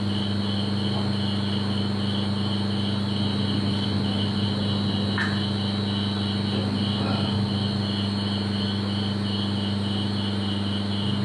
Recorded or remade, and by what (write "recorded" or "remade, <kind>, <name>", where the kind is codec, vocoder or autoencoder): recorded